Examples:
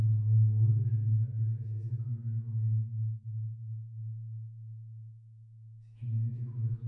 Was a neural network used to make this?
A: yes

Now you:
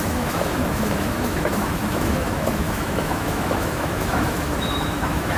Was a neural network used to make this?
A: yes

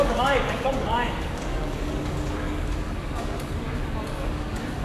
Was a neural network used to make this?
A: yes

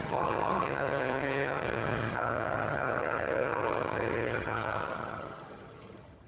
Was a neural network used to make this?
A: yes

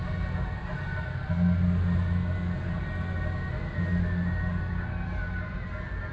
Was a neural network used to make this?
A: no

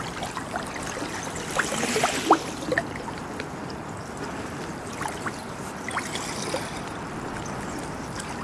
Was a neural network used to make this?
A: no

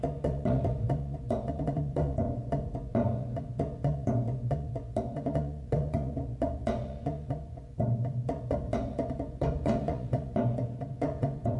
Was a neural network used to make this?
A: yes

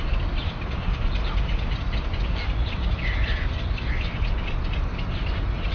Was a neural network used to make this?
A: no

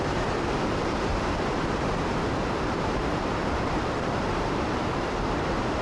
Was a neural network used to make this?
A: yes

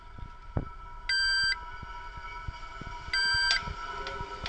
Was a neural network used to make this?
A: no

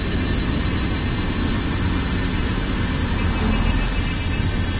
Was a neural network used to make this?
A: no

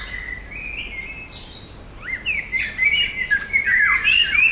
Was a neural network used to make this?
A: no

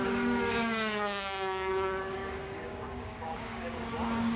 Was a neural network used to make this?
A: yes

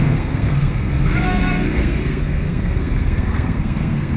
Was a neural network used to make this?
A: yes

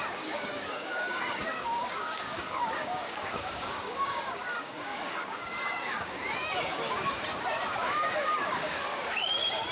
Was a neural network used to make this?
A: yes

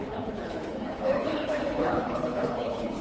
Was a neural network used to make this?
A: yes